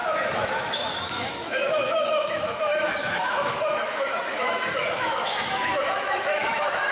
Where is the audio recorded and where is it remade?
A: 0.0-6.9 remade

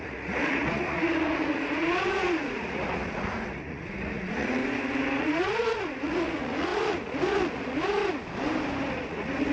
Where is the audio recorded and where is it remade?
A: 0.0-4.6 remade; 4.6-5.2 recorded; 5.2-8.0 remade; 8.0-8.9 recorded; 8.9-9.5 remade